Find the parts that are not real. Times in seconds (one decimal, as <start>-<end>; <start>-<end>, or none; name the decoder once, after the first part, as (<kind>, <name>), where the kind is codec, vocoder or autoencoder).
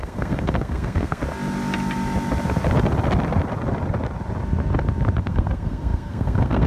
0.0-1.2 (codec, SNAC); 5.2-6.7